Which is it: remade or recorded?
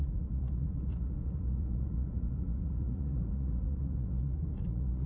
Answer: remade